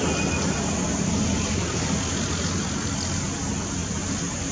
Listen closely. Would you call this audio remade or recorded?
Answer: recorded